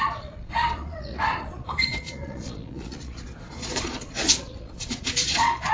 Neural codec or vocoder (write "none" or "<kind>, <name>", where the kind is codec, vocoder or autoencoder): vocoder, Vocos